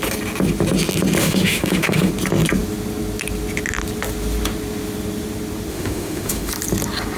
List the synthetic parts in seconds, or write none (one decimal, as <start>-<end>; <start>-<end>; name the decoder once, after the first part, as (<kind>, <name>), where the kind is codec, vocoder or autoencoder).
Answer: 1.2-2.1 (autoencoder, DAC-VAE); 5.7-6.5